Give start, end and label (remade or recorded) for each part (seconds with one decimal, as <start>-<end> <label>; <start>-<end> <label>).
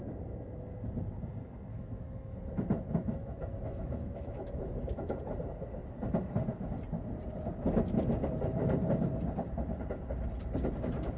0.0-1.7 recorded; 1.7-5.2 remade; 5.2-11.2 recorded